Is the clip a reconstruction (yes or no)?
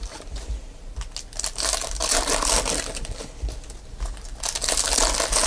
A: no